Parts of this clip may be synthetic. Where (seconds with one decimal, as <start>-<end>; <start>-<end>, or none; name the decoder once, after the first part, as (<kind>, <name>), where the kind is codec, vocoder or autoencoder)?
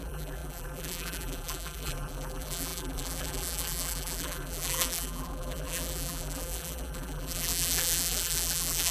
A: 0.0-8.9 (vocoder, BigVGAN v2)